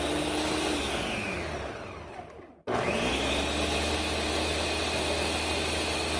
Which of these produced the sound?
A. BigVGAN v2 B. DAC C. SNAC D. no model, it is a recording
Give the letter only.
D